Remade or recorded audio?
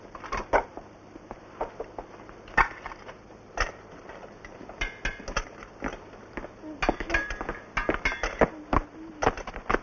recorded